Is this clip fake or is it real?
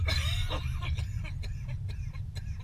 fake